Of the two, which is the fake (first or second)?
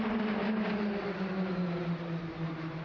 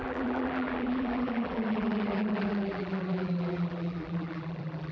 second